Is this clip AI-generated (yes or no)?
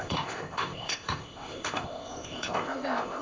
yes